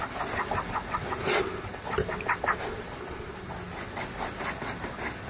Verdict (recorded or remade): recorded